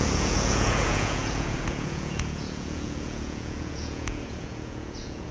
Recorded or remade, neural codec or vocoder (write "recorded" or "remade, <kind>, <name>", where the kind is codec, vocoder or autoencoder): remade, vocoder, Vocos